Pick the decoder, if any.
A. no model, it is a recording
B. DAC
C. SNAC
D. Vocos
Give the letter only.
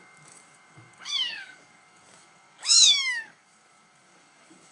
B